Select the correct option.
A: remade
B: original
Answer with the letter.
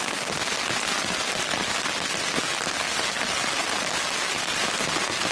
B